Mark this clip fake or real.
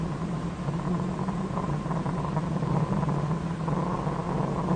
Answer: real